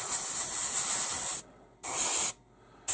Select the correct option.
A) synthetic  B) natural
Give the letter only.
B